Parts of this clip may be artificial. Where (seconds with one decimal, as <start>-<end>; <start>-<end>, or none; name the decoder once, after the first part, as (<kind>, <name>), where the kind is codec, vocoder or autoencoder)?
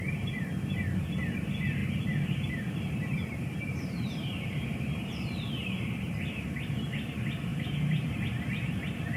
1.8-6.2 (vocoder, BigVGAN v2); 7.5-8.3